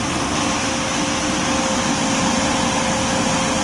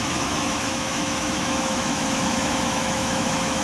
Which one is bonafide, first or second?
first